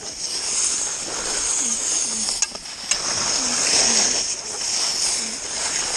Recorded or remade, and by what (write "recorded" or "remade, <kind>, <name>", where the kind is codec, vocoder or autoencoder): recorded